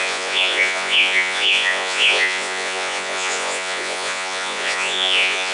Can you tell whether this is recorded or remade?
remade